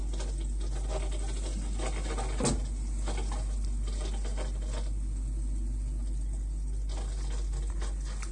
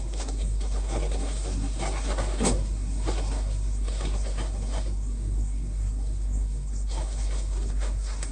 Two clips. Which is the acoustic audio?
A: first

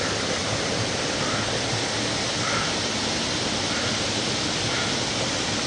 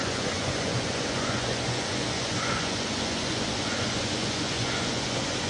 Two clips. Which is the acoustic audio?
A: first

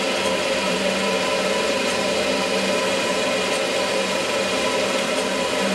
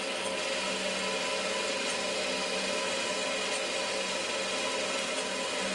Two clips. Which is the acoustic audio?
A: second